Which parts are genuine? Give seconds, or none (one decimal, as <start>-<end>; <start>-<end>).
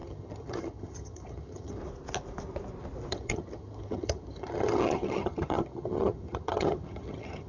1.8-3.1